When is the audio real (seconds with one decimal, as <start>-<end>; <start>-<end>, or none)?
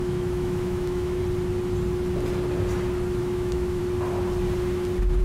1.2-3.2; 3.8-5.2